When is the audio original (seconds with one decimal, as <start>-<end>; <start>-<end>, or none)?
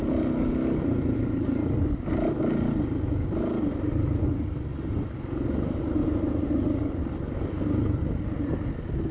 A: 0.0-9.1